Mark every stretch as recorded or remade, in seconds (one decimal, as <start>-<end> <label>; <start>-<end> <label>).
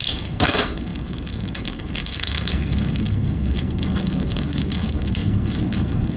0.0-6.2 remade